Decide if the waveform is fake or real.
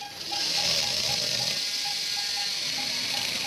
real